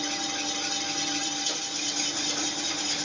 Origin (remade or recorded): recorded